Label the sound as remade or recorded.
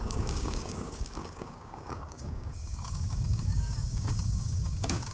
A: remade